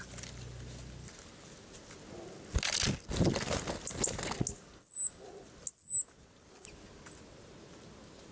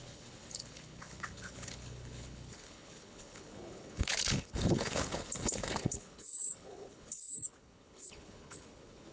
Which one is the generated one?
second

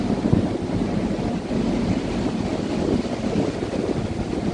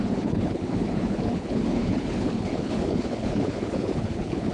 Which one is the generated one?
second